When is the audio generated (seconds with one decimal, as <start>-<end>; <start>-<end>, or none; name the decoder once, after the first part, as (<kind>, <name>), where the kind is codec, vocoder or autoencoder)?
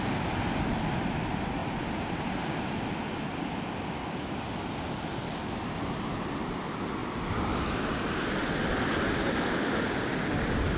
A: 1.6-2.2 (vocoder, BigVGAN v2); 7.0-7.7